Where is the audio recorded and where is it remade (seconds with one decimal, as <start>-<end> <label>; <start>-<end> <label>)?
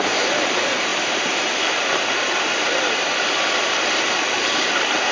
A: 0.0-5.1 remade